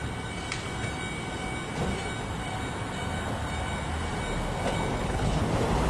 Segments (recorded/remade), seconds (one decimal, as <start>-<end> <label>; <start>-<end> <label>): 0.0-4.9 recorded; 4.9-5.4 remade; 5.4-5.9 recorded